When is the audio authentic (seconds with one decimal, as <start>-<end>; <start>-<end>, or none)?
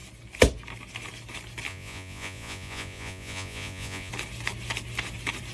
0.0-1.7; 4.1-5.5